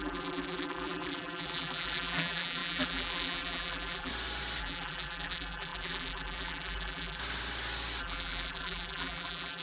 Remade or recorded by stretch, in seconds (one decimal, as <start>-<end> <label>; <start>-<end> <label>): 0.0-4.1 remade; 4.1-4.6 recorded; 4.6-7.2 remade; 7.2-8.0 recorded; 8.0-9.6 remade